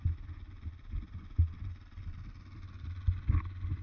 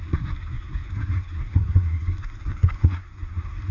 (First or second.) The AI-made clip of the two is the second